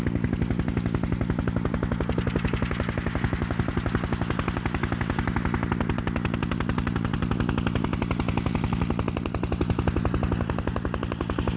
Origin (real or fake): real